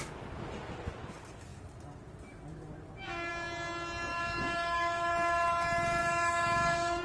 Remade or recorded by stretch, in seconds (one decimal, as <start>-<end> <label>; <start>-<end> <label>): 0.0-4.1 recorded; 4.1-5.1 remade; 5.1-6.0 recorded; 6.0-7.0 remade